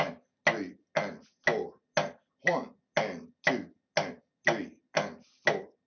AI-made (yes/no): no